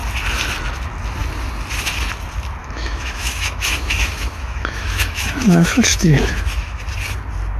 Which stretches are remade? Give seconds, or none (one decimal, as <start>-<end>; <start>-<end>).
2.6-6.8